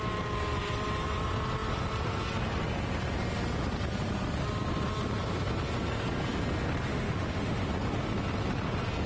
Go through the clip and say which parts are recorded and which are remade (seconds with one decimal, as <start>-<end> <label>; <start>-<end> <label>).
0.0-6.9 recorded; 6.9-7.7 remade; 7.7-9.1 recorded